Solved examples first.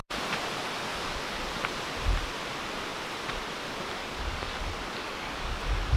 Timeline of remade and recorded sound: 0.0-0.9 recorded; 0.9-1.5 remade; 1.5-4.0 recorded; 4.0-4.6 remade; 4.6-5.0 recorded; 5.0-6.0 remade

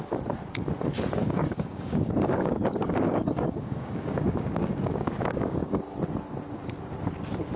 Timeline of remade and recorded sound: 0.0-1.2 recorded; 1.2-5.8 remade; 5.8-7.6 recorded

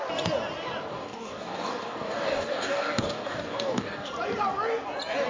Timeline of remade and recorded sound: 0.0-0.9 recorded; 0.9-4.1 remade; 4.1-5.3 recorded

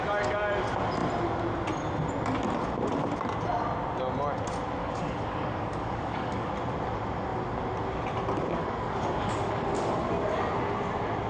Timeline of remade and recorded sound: 0.0-4.8 recorded; 4.8-6.5 remade; 6.5-8.6 recorded; 8.6-9.9 remade; 9.9-11.3 recorded

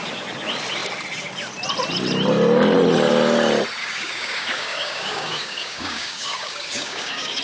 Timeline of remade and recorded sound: 0.0-3.8 recorded; 3.8-7.4 remade